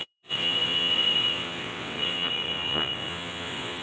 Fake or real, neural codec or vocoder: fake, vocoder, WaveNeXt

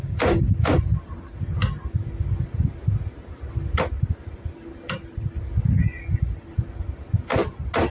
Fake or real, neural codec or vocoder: real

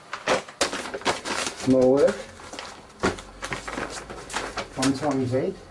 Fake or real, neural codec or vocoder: real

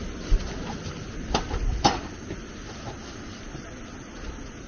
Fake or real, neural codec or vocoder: fake, vocoder, BigVGAN v2